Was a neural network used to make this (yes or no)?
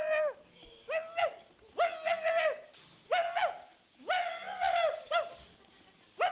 no